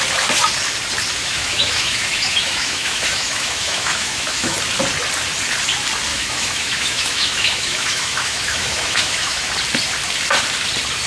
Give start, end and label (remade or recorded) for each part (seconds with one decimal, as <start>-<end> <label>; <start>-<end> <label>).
0.0-1.2 recorded; 1.2-4.6 remade; 4.6-6.1 recorded; 6.1-9.4 remade; 9.4-11.1 recorded